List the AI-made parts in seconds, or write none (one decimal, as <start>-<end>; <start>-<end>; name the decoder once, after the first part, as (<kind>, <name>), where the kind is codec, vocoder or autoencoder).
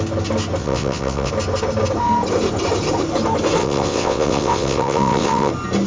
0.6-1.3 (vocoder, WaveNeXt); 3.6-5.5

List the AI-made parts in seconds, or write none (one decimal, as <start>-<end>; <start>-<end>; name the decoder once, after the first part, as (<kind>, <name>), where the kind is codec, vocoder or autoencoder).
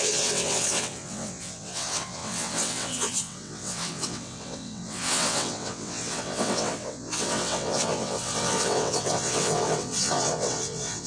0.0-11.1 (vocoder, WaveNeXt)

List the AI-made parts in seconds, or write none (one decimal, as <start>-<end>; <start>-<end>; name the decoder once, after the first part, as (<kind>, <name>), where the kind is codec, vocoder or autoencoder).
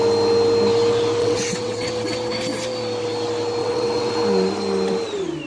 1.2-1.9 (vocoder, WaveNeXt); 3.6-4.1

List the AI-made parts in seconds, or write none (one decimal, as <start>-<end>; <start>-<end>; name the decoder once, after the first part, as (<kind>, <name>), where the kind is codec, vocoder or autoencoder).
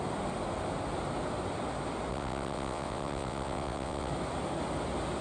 2.1-4.1 (vocoder, WaveNeXt)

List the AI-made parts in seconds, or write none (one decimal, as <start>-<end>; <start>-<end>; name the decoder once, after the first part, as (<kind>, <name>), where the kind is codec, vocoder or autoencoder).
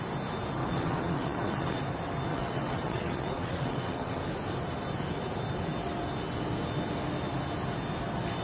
0.6-1.8 (vocoder, WaveNeXt); 2.3-4.2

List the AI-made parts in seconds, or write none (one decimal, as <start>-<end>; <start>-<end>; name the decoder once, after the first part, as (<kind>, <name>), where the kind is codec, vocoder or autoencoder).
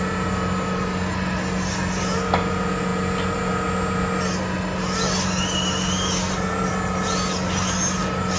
none